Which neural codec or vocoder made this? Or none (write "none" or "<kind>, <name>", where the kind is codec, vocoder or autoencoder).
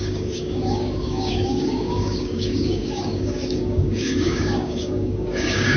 codec, DAC